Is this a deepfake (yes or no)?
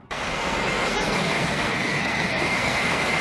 yes